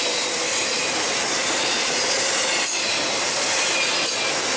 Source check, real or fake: real